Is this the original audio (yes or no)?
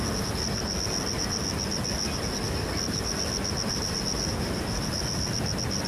yes